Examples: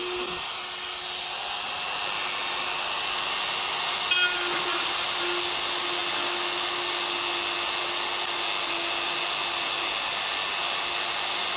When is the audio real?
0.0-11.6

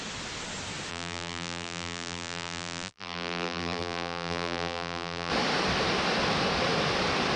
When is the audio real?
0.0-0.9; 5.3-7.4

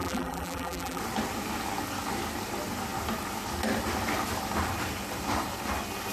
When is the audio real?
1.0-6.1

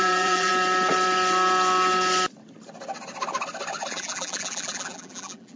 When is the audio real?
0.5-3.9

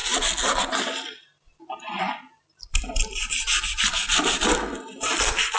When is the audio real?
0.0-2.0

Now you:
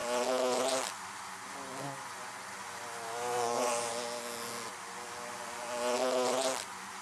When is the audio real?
0.0-7.0

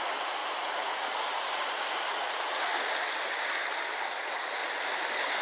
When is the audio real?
2.7-4.1; 4.6-5.4

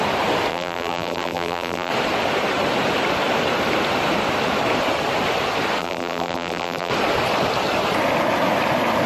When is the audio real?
0.0-0.5; 1.9-5.8; 6.9-9.1